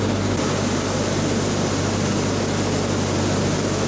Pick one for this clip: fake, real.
real